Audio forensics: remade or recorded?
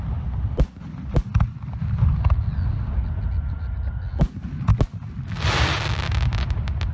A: recorded